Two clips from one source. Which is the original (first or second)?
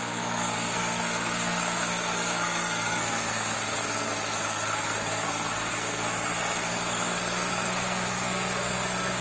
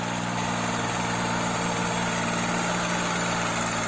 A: second